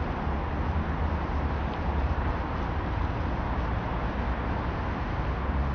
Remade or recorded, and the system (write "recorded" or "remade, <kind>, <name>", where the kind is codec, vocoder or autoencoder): recorded